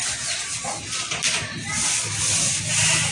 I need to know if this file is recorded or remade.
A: recorded